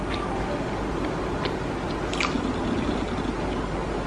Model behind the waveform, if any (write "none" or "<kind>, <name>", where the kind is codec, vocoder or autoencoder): none